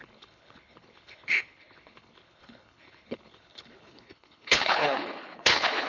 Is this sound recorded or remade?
remade